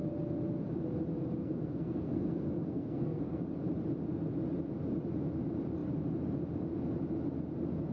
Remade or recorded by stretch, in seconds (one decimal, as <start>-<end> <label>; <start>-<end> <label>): 0.0-1.4 recorded; 1.4-3.4 remade; 3.4-7.9 recorded